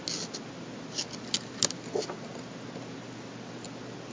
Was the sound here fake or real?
real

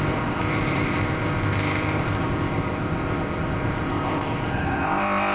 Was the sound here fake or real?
fake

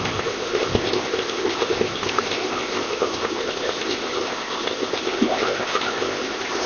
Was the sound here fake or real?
fake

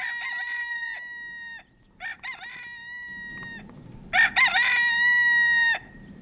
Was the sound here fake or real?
real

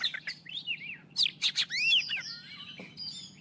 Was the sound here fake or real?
real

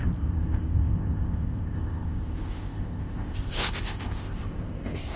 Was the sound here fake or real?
fake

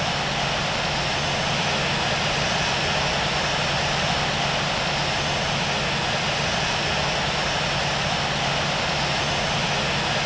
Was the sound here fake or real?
real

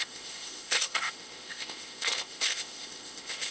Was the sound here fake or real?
fake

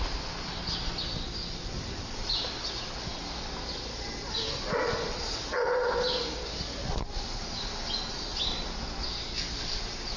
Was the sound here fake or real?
real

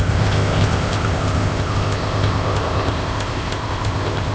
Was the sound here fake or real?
fake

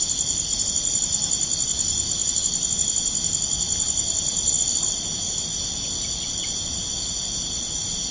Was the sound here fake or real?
real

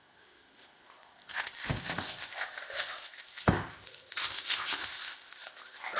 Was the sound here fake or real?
fake